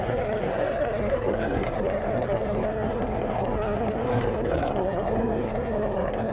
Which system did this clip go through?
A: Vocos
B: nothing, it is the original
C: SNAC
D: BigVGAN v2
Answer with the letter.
C